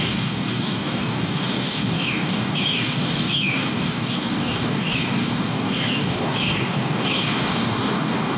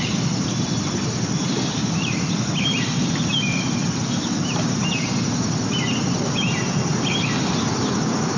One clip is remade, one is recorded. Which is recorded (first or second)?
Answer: second